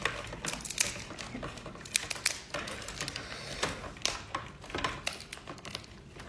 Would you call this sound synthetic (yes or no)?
no